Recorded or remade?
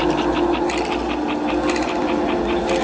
recorded